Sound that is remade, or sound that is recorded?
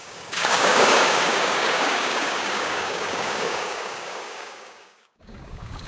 remade